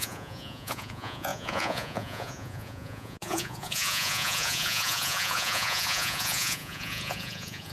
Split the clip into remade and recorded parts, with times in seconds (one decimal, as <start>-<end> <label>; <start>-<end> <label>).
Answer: 0.0-7.7 remade